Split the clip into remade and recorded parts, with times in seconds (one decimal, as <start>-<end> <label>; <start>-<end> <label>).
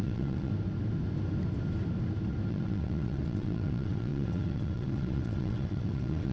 0.0-0.5 remade; 0.5-2.5 recorded; 2.5-6.3 remade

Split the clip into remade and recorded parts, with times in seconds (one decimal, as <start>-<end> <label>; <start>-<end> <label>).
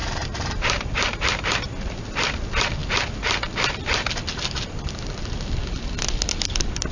0.0-1.2 remade; 1.2-6.9 recorded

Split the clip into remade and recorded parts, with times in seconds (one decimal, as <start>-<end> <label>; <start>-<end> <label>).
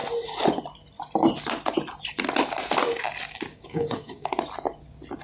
0.0-3.5 recorded; 3.5-4.3 remade; 4.3-5.2 recorded